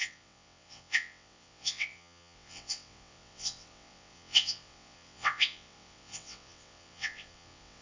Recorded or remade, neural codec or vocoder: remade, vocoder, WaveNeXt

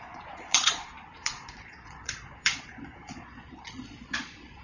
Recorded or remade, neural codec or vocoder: remade, vocoder, Vocos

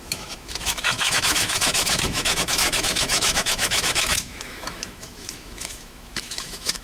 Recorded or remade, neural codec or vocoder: remade, autoencoder, DAC-VAE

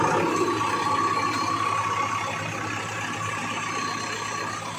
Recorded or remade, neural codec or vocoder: recorded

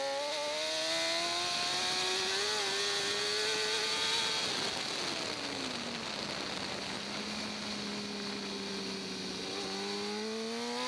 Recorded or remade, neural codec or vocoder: recorded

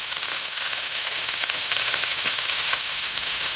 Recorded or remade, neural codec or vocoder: remade, autoencoder, DAC-VAE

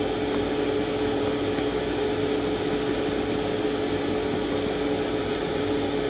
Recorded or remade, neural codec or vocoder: recorded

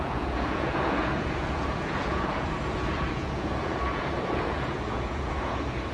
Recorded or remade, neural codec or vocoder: remade, vocoder, Vocos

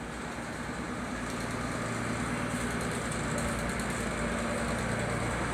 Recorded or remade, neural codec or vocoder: recorded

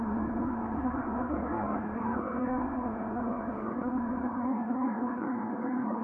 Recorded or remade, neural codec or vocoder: remade, codec, SNAC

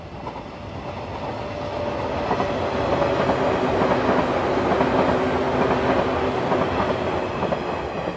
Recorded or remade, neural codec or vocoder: recorded